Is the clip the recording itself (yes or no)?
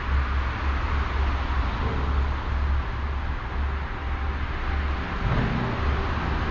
yes